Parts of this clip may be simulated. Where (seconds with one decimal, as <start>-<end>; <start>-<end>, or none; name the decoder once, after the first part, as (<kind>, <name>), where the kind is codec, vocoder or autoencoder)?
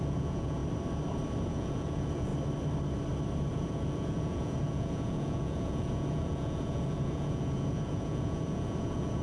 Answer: 0.0-0.6 (vocoder, Vocos); 1.4-2.3; 3.5-9.2